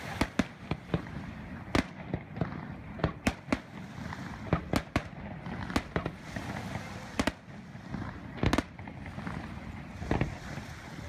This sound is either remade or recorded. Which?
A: recorded